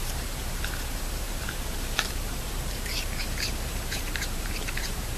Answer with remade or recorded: remade